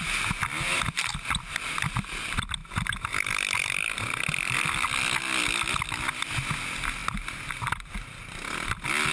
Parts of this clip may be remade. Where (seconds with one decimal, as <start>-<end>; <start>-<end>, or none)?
none